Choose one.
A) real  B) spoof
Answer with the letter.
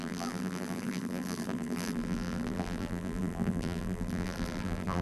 B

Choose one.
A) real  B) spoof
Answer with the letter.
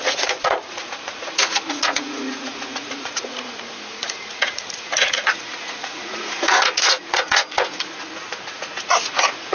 B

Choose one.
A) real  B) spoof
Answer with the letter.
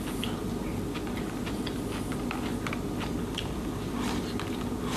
A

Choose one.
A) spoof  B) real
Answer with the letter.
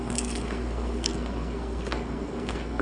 A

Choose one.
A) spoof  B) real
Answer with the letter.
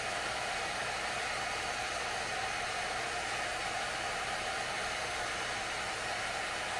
B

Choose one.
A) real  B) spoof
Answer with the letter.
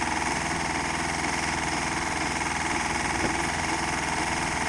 A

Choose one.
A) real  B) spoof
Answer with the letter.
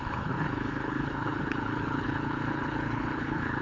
B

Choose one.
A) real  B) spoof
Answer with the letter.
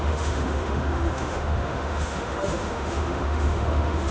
B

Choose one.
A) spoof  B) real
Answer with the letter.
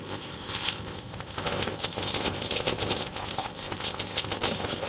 A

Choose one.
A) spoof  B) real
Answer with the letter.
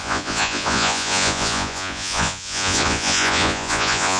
A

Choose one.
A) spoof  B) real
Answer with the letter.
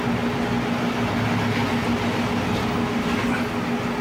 B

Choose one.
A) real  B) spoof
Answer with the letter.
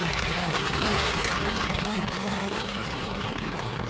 B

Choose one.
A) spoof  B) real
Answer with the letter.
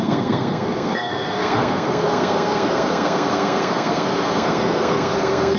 A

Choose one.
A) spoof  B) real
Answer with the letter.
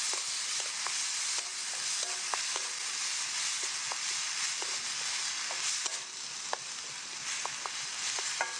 B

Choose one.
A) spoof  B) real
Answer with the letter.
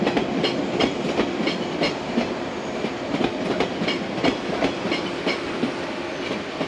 B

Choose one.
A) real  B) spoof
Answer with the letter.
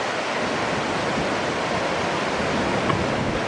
A